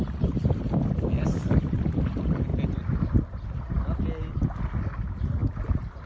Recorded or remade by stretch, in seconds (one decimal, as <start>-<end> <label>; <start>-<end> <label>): 0.0-6.1 recorded